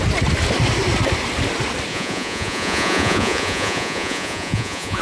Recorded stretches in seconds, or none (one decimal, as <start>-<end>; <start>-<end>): 0.0-1.9